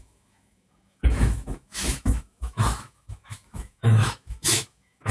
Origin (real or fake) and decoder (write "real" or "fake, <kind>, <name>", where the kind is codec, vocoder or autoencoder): fake, autoencoder, DAC-VAE